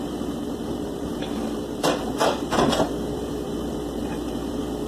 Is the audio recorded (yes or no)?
no